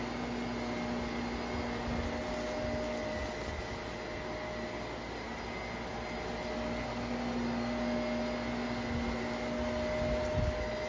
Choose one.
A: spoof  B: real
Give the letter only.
B